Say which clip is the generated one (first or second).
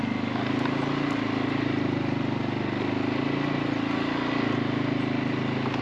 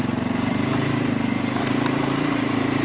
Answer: second